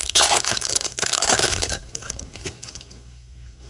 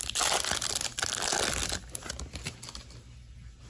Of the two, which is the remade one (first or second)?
first